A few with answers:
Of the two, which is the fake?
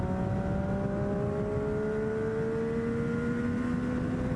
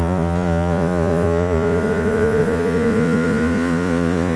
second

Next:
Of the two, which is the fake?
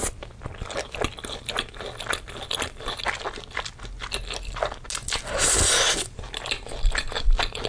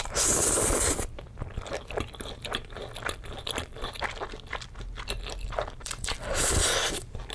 second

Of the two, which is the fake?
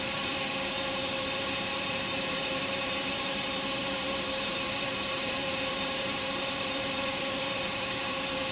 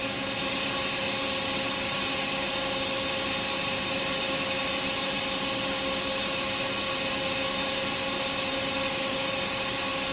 first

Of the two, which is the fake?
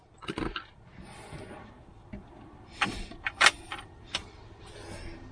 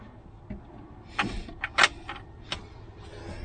first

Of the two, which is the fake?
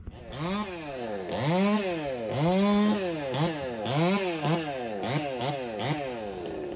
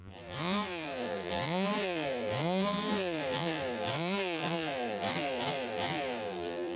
second